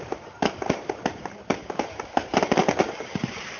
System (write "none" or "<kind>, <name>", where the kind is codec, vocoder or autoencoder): vocoder, BigVGAN v2